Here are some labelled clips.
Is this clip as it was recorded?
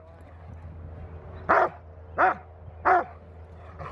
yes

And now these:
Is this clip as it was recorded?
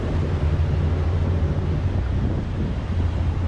yes